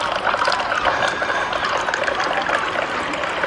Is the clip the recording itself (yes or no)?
yes